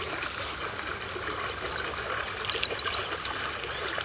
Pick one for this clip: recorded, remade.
recorded